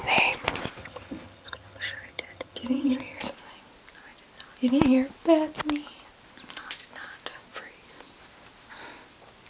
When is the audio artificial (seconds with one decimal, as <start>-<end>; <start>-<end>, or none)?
0.8-3.2